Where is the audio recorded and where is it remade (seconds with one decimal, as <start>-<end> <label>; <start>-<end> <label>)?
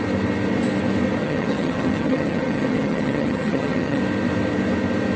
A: 0.0-1.2 recorded; 1.2-4.0 remade; 4.0-5.2 recorded